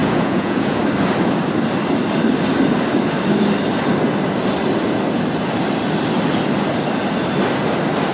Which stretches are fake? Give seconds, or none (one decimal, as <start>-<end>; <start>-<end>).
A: 0.0-0.8